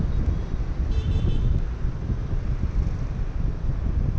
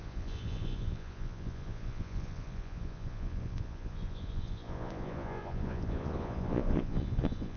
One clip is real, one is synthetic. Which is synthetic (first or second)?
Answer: second